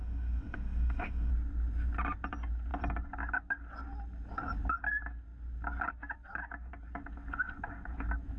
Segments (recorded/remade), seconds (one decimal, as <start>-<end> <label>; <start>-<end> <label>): 0.0-1.3 remade; 1.3-8.4 recorded